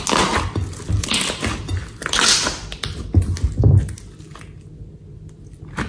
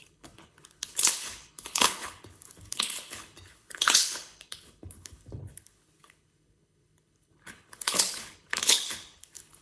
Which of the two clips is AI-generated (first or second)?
second